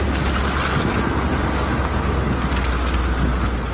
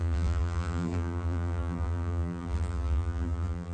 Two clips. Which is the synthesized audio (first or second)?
second